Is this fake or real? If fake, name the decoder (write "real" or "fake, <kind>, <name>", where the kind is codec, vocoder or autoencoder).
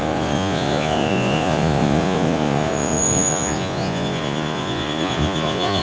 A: fake, vocoder, Vocos